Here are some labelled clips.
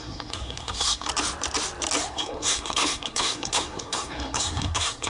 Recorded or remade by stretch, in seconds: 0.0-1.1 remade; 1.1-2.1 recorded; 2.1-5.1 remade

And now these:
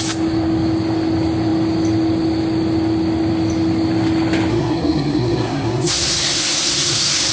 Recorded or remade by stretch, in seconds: 0.0-4.5 recorded; 4.5-7.3 remade

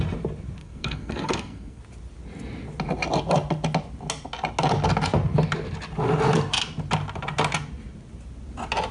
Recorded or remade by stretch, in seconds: 0.0-0.6 recorded; 0.6-1.8 remade; 1.8-8.9 recorded

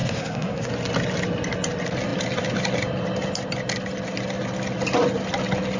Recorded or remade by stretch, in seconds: 0.0-0.7 remade; 0.7-5.8 recorded

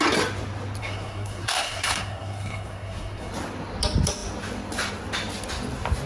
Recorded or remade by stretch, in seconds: 0.0-0.8 recorded; 0.8-3.3 remade; 3.3-6.1 recorded

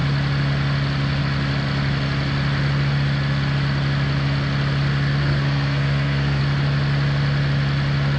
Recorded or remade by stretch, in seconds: 0.0-5.2 recorded; 5.2-6.4 remade; 6.4-8.2 recorded

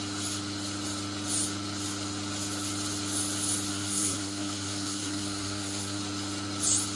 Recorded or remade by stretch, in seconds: 0.0-3.7 recorded; 3.7-6.0 remade; 6.0-7.0 recorded